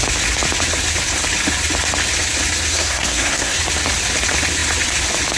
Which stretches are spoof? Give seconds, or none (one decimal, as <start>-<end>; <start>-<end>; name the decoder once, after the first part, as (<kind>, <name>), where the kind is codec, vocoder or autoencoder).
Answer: 2.7-3.6 (codec, SNAC)